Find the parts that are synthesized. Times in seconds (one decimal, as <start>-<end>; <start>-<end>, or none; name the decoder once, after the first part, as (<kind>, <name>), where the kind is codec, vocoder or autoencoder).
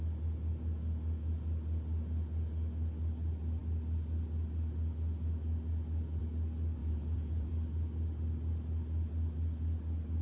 6.8-7.5 (vocoder, Vocos)